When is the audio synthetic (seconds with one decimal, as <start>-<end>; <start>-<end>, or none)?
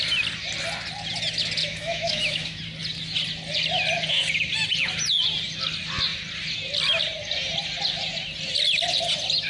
1.6-2.6